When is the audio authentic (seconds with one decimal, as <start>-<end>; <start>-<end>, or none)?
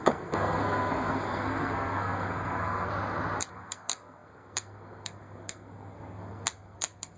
2.9-3.5